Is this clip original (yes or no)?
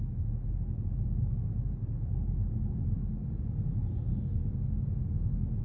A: yes